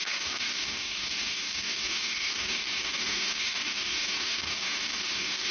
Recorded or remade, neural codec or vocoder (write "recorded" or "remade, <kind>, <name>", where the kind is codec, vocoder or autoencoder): remade, codec, DAC